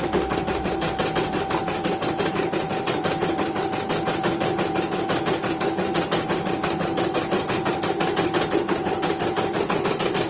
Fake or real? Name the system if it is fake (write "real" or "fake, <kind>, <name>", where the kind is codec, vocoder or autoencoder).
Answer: real